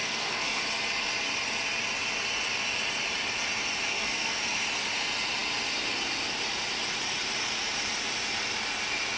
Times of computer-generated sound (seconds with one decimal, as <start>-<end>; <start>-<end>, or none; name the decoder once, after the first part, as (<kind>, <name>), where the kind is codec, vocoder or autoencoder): 0.0-0.6 (codec, SNAC); 3.9-4.4